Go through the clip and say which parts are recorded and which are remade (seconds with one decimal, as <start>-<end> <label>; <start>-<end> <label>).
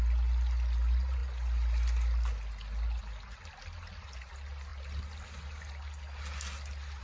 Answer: 0.0-7.0 recorded